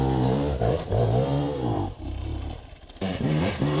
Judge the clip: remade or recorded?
remade